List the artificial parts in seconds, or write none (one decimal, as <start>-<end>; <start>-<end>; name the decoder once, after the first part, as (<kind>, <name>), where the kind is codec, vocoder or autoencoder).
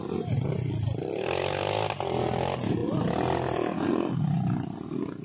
none